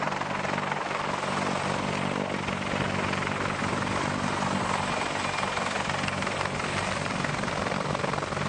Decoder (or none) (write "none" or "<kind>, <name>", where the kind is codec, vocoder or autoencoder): none